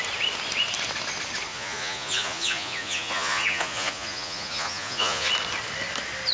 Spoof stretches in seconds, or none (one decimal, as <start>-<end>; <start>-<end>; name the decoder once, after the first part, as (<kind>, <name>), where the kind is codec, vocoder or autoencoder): 1.5-5.3 (vocoder, Vocos)